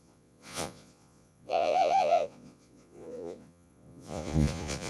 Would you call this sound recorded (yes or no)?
no